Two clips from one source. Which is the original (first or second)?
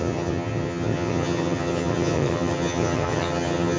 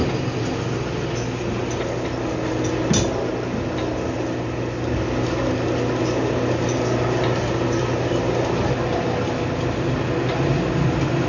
second